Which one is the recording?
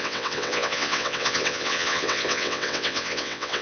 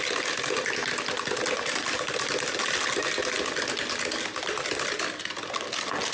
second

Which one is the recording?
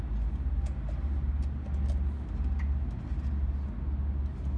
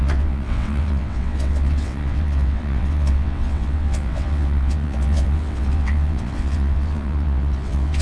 first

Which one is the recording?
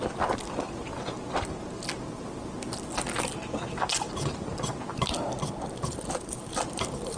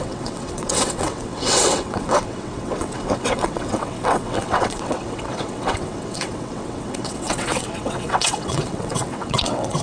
first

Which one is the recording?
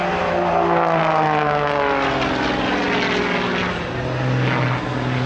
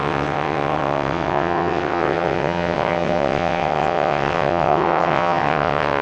first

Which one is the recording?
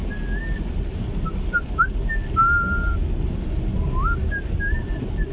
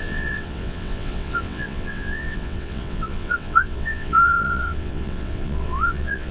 first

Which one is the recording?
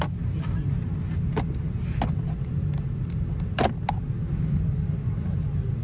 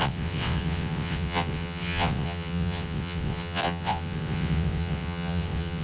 first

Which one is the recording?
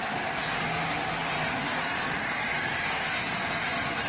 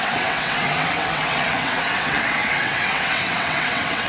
first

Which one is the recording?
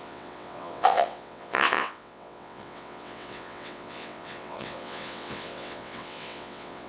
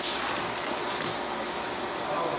second